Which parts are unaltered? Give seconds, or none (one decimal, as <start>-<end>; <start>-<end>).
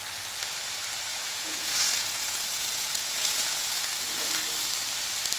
0.0-1.1; 4.3-5.4